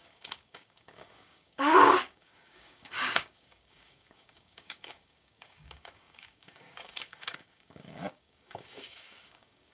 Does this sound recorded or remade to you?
remade